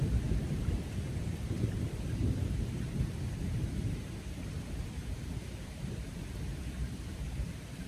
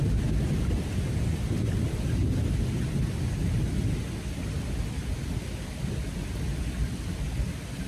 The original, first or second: second